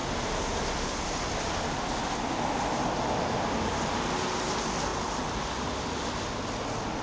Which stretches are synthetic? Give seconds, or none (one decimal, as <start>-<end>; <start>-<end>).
none